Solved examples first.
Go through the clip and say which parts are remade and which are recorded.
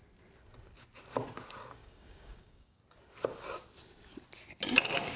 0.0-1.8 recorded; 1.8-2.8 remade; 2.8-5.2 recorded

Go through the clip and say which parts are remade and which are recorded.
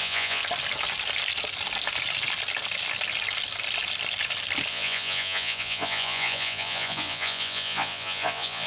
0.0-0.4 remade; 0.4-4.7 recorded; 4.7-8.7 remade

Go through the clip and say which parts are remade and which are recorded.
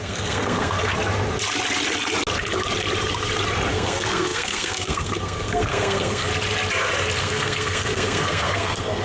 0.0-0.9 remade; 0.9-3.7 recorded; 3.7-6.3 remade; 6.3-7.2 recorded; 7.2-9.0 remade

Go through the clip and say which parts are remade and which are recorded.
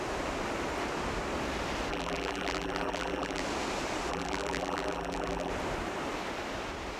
0.0-1.9 recorded; 1.9-3.4 remade; 3.4-4.1 recorded; 4.1-5.5 remade; 5.5-7.0 recorded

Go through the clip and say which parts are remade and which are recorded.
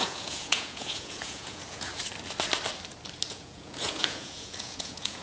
0.0-1.9 remade; 1.9-3.3 recorded; 3.3-5.2 remade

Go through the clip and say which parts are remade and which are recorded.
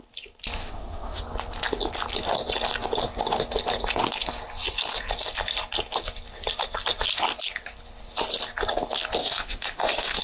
0.0-0.6 recorded; 0.6-1.2 remade; 1.2-9.2 recorded; 9.2-10.2 remade